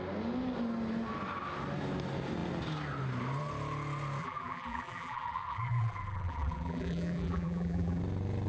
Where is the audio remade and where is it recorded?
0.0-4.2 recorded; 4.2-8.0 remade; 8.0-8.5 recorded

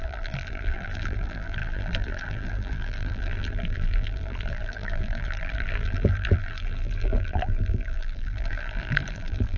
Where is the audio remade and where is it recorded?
0.0-9.6 remade

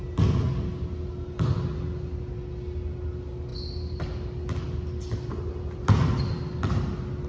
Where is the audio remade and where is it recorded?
0.0-7.3 recorded

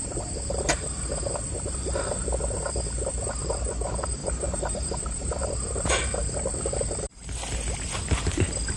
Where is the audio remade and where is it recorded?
0.0-4.2 recorded; 4.2-7.1 remade; 7.1-8.8 recorded

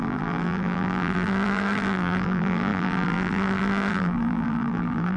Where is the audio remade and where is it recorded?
0.0-5.2 remade